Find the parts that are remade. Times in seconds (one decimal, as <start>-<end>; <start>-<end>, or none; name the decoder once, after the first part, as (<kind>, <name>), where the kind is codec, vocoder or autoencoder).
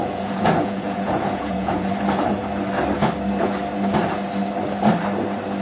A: 0.0-1.9 (vocoder, Vocos)